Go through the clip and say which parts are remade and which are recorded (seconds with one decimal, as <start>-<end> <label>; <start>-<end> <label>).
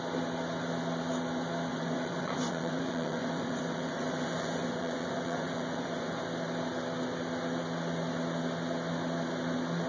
0.0-1.7 recorded; 1.7-6.2 remade; 6.2-9.9 recorded